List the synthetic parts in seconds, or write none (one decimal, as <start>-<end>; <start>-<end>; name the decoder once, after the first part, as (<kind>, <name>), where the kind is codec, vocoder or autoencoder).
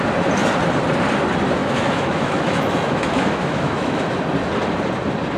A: 1.6-4.0 (autoencoder, DAC-VAE)